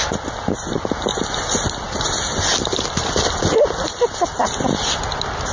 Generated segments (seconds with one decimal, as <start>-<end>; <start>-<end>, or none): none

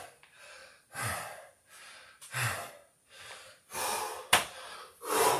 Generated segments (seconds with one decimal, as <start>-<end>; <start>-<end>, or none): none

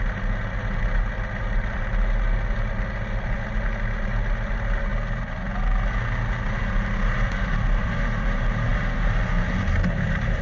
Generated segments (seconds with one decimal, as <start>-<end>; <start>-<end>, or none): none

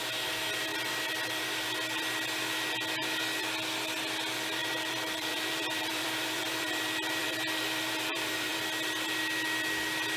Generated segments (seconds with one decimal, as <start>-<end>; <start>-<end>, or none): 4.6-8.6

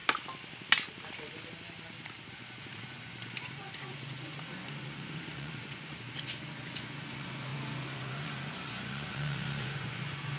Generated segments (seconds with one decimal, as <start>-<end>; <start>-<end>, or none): 2.3-10.4